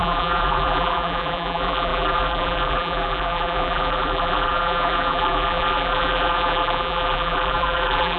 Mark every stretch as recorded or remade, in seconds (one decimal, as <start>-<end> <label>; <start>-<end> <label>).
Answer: 0.0-8.2 remade